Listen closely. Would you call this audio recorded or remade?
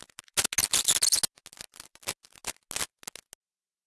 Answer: recorded